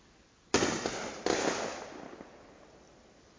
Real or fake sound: real